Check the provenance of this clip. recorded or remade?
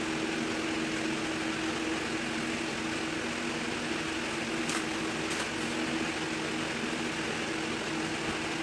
recorded